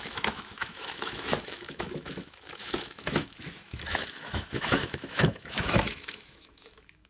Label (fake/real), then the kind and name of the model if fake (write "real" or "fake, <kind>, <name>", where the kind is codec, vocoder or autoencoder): fake, autoencoder, DAC-VAE